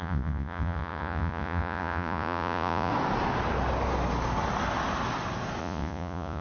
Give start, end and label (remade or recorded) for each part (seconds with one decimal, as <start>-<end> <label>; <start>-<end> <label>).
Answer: 0.0-2.9 remade; 2.9-5.6 recorded; 5.6-6.4 remade